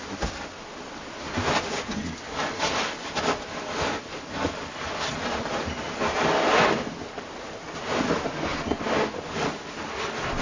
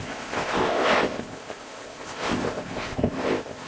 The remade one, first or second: second